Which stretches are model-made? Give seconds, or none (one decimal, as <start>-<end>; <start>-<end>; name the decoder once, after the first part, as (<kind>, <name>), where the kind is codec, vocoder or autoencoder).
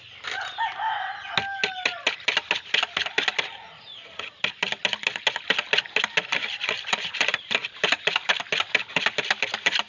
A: 7.6-8.6 (vocoder, BigVGAN v2)